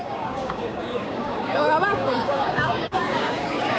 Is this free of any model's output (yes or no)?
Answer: no